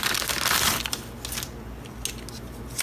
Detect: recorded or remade recorded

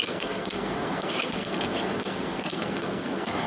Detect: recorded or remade remade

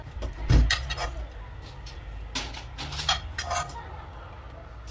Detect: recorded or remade recorded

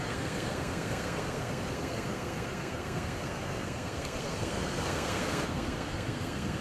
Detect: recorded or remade remade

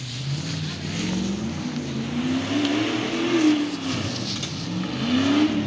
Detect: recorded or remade recorded